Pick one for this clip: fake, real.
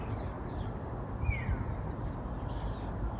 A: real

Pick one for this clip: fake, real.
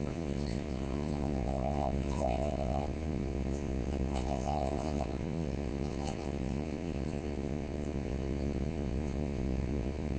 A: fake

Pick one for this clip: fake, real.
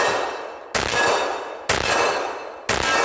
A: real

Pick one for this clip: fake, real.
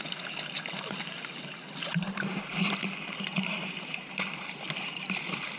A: real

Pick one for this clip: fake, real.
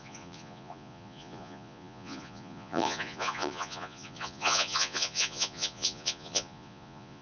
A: fake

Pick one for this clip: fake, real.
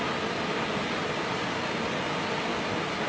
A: real